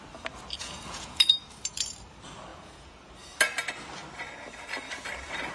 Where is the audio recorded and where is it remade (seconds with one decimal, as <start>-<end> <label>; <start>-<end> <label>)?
0.0-0.6 recorded; 0.6-1.2 remade; 1.2-2.5 recorded; 2.5-3.1 remade; 3.1-5.5 recorded